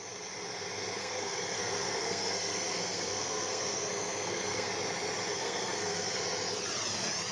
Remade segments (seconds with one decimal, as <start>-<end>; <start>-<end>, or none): 1.0-4.7; 5.3-6.2